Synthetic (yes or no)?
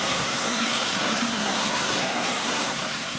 yes